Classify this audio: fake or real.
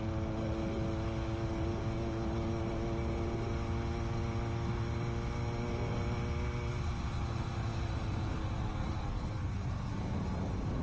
real